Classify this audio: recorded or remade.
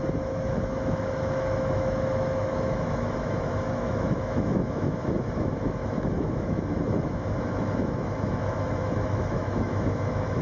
remade